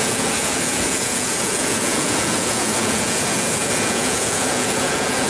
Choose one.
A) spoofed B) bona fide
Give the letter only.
A